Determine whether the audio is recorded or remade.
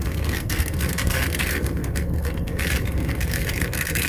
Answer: remade